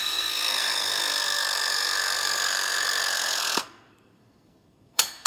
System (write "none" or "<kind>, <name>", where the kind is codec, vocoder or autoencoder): codec, SNAC